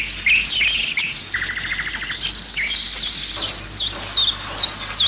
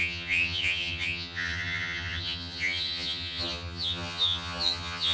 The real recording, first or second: first